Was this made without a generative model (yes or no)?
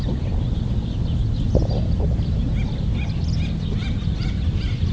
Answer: yes